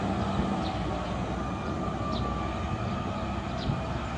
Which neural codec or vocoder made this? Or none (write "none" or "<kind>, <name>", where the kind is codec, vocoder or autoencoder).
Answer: none